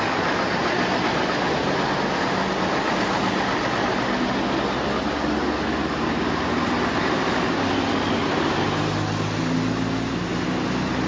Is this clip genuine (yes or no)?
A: yes